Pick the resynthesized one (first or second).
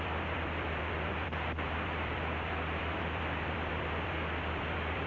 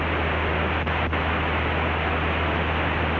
first